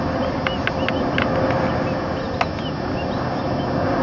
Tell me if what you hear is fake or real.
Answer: real